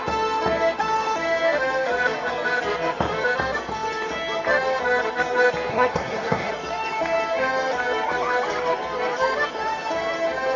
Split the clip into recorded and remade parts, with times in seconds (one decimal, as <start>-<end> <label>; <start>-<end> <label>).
0.0-5.7 recorded; 5.7-6.5 remade; 6.5-10.6 recorded